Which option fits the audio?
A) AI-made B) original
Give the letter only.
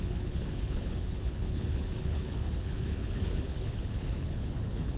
A